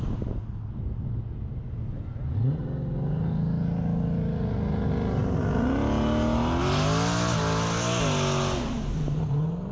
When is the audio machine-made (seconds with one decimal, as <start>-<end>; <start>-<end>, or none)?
none